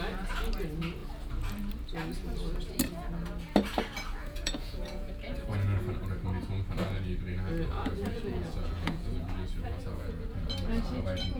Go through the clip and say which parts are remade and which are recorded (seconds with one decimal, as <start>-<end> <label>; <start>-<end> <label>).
0.0-4.2 recorded; 4.2-5.1 remade; 5.1-7.7 recorded; 7.7-10.1 remade; 10.1-11.4 recorded